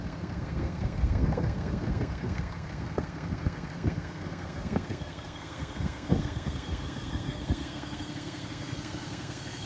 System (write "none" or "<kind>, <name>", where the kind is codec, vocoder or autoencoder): codec, SNAC